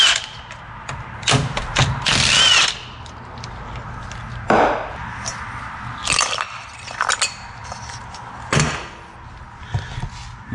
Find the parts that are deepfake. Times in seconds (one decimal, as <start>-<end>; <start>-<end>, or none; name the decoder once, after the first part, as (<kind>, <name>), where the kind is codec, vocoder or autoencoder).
none